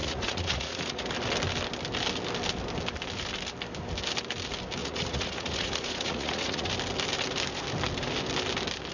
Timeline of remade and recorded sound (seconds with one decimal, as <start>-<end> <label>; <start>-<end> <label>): 0.0-1.0 remade; 1.0-4.8 recorded; 4.8-6.7 remade; 6.7-8.9 recorded